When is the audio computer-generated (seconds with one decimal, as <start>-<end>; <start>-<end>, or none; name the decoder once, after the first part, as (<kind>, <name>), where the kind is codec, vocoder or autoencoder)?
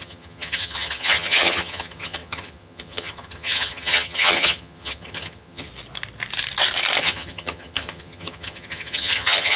0.0-5.7 (vocoder, HiFi-GAN); 7.0-9.6